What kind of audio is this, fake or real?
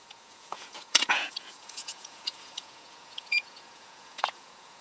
fake